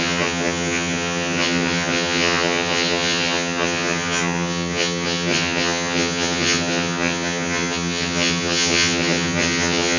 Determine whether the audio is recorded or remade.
remade